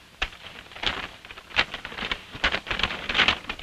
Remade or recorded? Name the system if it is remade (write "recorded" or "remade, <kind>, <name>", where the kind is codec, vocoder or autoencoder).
remade, vocoder, BigVGAN v2